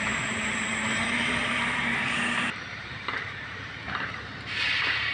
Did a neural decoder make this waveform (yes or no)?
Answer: yes